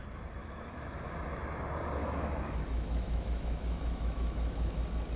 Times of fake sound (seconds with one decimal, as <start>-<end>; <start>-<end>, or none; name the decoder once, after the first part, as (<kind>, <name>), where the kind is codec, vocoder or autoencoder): 0.4-1.1 (autoencoder, DAC-VAE); 2.0-4.8